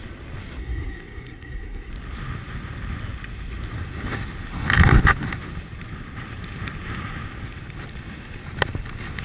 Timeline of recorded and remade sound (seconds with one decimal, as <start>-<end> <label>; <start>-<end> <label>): 0.0-0.6 recorded; 0.6-1.9 remade; 1.9-9.2 recorded